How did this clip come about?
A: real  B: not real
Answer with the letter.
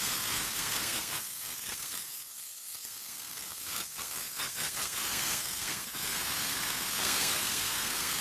B